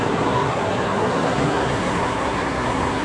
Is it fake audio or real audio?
fake